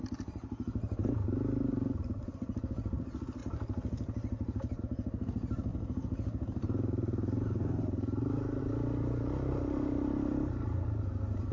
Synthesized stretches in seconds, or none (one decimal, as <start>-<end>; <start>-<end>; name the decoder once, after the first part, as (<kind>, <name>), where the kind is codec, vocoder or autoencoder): 3.4-4.8 (vocoder, BigVGAN v2); 5.7-8.6

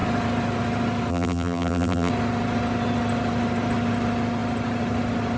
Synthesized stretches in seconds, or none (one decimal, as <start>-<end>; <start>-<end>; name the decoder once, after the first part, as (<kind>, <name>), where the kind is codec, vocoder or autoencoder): 1.1-2.1 (vocoder, BigVGAN v2)

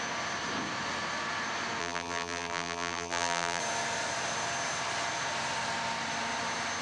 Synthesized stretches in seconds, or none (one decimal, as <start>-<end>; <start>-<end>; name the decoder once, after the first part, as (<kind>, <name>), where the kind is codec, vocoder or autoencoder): 1.8-3.6 (vocoder, BigVGAN v2)

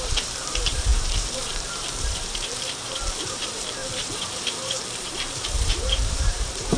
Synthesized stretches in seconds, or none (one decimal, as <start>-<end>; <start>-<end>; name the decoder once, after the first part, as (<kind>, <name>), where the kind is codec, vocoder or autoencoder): 0.0-6.8 (vocoder, BigVGAN v2)

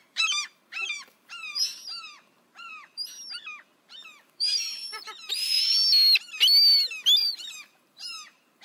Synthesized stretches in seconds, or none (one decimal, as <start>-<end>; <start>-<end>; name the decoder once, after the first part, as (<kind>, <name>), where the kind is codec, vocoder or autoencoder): 0.0-5.7 (vocoder, BigVGAN v2); 7.2-8.6